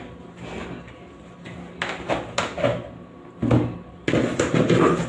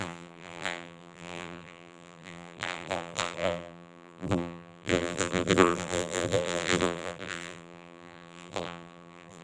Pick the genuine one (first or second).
first